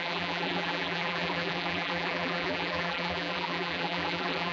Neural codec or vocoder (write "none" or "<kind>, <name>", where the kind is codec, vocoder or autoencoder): vocoder, BigVGAN v2